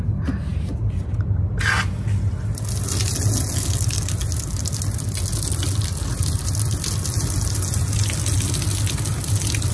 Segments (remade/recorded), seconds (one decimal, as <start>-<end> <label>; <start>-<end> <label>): 0.0-9.7 recorded